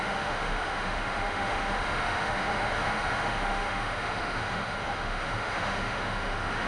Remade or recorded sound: remade